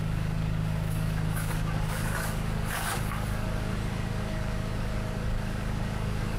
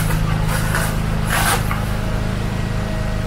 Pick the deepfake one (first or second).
first